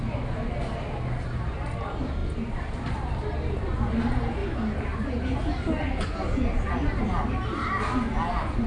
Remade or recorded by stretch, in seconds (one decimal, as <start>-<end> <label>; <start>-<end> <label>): 0.0-8.7 recorded